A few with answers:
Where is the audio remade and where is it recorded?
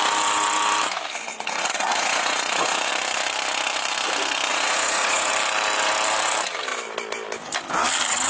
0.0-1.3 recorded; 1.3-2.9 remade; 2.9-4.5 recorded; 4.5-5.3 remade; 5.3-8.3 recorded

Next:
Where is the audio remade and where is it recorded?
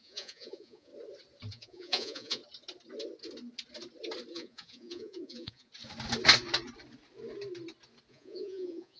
0.0-0.9 remade; 0.9-1.5 recorded; 1.5-2.4 remade; 2.4-4.3 recorded; 4.3-5.7 remade; 5.7-8.1 recorded; 8.1-9.0 remade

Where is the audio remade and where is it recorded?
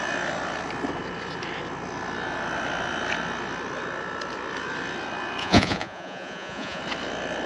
0.0-5.4 recorded; 5.4-6.8 remade; 6.8-7.5 recorded